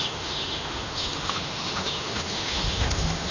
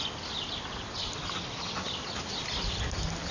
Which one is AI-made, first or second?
first